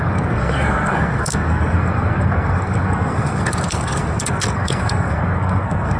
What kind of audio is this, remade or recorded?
remade